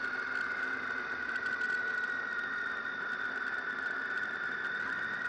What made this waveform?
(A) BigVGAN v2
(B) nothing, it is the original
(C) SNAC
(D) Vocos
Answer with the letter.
B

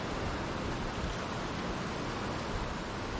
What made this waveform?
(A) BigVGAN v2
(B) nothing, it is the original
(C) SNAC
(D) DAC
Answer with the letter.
B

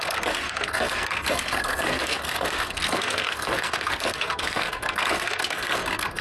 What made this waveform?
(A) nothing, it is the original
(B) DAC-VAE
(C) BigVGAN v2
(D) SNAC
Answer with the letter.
D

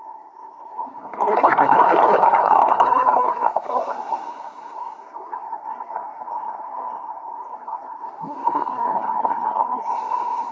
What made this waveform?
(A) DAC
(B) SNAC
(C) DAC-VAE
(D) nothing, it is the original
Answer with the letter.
B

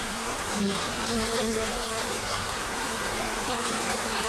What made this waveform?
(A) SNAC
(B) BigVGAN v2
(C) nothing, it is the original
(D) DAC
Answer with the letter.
A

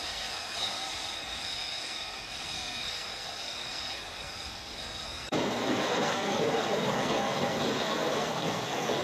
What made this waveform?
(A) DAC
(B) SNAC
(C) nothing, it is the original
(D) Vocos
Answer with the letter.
B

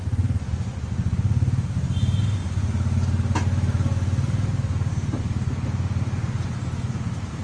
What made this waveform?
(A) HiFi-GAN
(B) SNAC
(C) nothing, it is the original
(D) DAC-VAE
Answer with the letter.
C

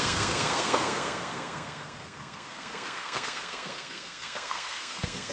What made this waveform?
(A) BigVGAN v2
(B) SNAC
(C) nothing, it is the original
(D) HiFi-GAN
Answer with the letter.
B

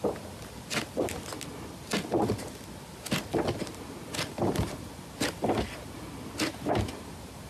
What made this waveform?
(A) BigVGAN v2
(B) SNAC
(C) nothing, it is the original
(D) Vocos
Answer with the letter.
C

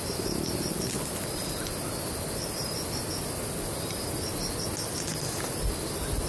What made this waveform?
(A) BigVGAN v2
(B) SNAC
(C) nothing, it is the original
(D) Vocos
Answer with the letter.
C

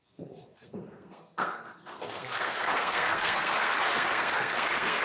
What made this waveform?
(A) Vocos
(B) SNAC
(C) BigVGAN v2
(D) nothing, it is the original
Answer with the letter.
B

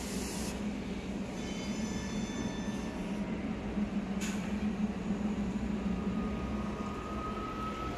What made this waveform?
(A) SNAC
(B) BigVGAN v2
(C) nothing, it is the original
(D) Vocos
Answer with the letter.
C